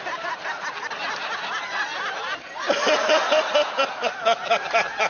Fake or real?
real